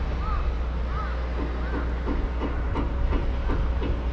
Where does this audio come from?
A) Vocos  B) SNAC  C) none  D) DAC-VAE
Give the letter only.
C